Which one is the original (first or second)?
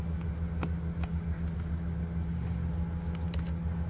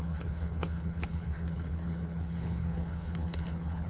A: first